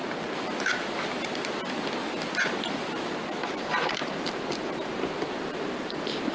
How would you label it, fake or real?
real